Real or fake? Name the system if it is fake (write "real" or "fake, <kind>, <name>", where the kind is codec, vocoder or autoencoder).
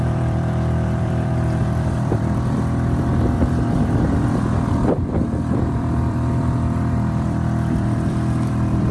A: fake, vocoder, BigVGAN v2